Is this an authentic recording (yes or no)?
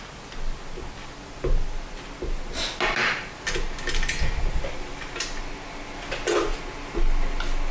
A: yes